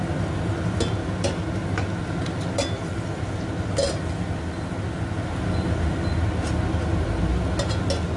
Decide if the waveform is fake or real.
real